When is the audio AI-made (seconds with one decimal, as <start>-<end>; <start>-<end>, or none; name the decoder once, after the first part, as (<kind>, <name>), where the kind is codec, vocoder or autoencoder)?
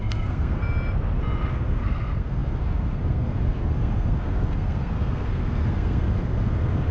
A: 0.0-0.6 (codec, SNAC); 1.5-6.9